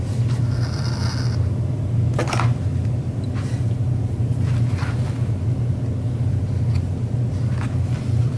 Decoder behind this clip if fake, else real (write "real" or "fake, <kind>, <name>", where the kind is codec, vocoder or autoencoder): real